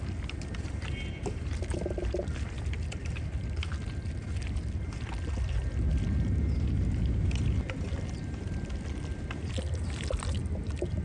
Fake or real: real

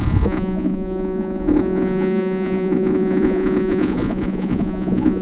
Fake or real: fake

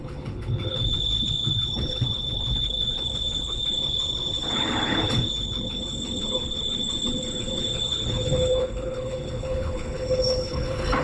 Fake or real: fake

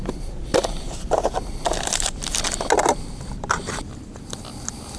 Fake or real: real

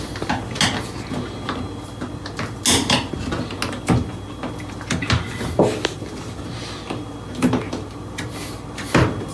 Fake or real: real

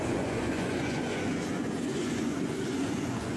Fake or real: fake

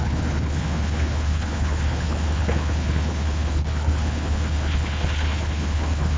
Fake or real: fake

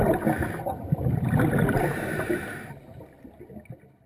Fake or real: fake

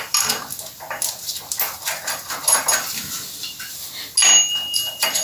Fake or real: real